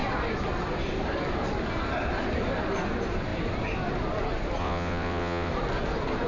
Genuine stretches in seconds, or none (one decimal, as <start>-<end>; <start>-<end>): 0.0-4.6; 5.5-6.3